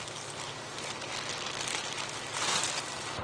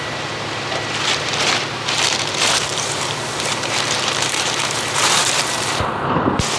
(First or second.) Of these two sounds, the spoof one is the second